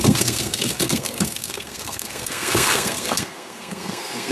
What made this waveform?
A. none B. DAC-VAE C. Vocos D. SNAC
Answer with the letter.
D